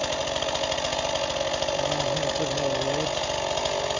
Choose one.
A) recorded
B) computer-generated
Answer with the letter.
A